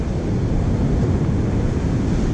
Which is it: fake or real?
real